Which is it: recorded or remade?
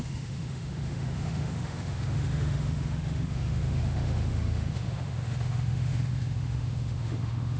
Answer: remade